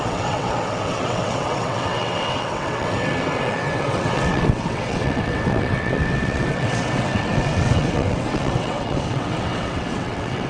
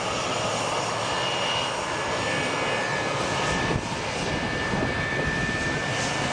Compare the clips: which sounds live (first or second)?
second